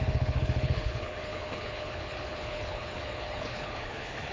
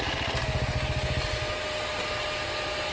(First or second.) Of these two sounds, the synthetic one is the first